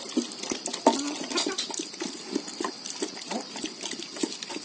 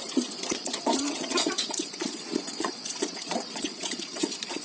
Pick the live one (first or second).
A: first